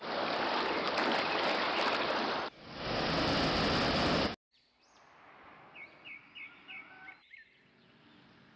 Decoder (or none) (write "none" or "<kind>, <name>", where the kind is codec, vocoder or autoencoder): none